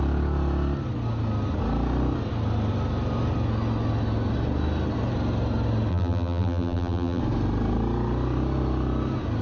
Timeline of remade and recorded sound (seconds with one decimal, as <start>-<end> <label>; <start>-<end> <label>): 0.0-5.9 recorded; 5.9-7.2 remade; 7.2-9.4 recorded